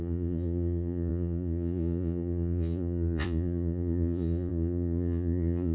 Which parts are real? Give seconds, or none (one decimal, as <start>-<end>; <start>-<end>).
none